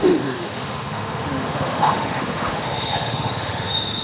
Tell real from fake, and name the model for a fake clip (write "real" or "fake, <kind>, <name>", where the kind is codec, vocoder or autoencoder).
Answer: fake, autoencoder, DAC-VAE